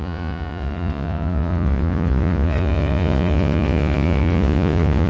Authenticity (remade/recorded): remade